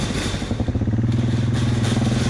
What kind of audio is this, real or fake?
real